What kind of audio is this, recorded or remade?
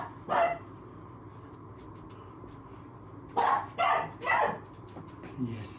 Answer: recorded